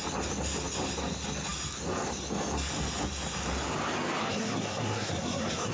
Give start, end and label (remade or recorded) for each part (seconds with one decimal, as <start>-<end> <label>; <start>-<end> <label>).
0.0-4.2 recorded; 4.2-5.7 remade